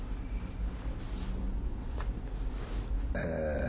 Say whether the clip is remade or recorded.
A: recorded